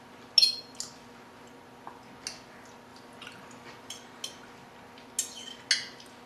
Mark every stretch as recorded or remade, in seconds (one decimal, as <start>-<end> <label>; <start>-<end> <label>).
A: 0.0-6.3 recorded